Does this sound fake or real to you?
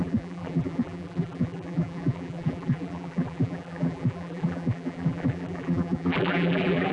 fake